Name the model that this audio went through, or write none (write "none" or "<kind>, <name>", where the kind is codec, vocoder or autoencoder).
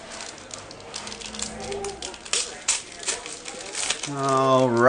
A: none